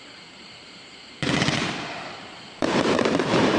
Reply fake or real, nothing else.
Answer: fake